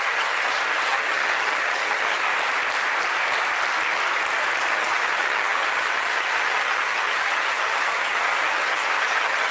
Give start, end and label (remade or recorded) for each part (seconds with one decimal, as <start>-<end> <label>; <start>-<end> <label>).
0.0-2.3 remade; 2.3-4.7 recorded; 4.7-9.5 remade

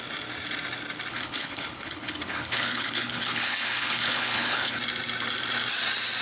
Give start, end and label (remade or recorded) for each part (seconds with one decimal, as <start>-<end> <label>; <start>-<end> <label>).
0.0-1.1 recorded; 1.1-4.8 remade; 4.8-6.2 recorded

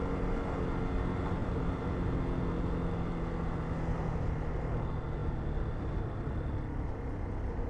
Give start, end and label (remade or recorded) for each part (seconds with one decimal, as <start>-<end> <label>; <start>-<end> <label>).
0.0-7.7 recorded

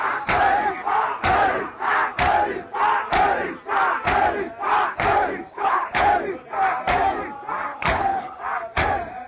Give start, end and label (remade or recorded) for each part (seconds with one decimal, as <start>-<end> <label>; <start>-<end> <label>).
0.0-5.5 recorded; 5.5-6.1 remade; 6.1-7.7 recorded; 7.7-8.4 remade; 8.4-9.3 recorded